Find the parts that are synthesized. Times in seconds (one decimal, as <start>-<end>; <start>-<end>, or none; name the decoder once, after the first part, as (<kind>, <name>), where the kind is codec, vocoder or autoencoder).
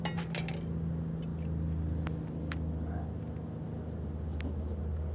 none